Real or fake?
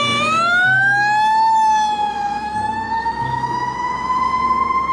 fake